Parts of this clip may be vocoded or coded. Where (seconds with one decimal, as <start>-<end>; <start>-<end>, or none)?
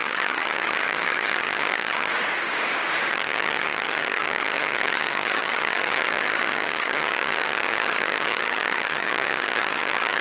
0.0-2.1; 3.1-10.2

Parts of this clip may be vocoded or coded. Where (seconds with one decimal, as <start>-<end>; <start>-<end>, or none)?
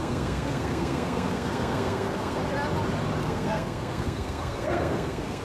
0.0-2.4; 3.2-5.4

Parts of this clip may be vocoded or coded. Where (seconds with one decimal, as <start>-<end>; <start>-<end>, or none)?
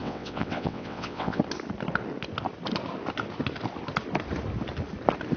0.0-1.4